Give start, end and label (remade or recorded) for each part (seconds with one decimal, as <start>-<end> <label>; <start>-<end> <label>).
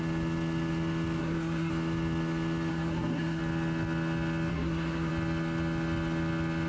0.0-1.2 recorded; 1.2-1.7 remade; 1.7-2.7 recorded; 2.7-3.4 remade; 3.4-4.5 recorded; 4.5-5.1 remade; 5.1-6.7 recorded